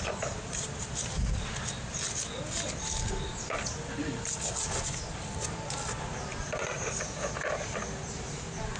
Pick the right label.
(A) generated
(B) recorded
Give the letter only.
B